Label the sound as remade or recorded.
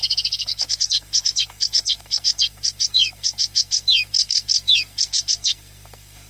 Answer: remade